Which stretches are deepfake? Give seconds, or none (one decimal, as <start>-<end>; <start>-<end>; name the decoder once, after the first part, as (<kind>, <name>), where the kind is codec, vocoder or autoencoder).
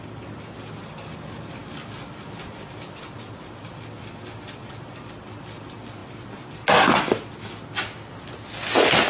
none